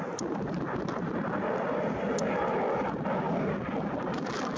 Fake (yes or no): no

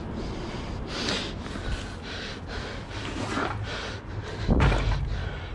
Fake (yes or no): no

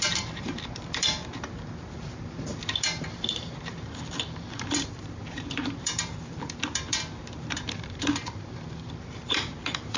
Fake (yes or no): yes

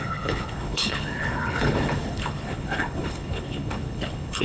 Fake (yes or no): yes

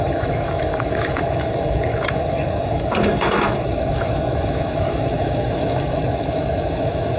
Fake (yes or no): yes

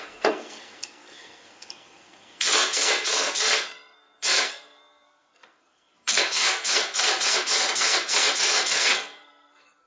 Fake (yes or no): yes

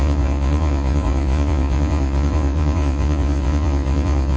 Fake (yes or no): yes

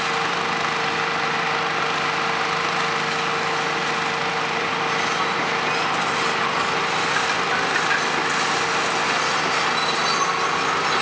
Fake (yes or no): no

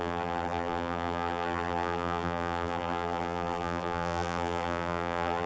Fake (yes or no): yes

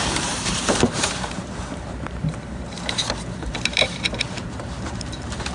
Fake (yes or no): yes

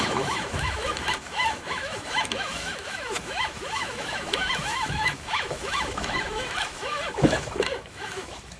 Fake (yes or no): yes